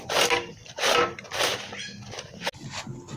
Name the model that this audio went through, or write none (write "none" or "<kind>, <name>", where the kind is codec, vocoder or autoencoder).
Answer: none